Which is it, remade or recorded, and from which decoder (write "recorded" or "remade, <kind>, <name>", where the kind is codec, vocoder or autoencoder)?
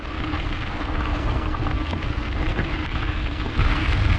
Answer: remade, codec, SNAC